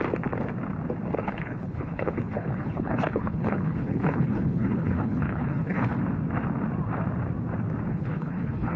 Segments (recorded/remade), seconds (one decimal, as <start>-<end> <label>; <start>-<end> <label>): 0.0-1.2 recorded; 1.2-6.0 remade; 6.0-7.9 recorded; 7.9-8.8 remade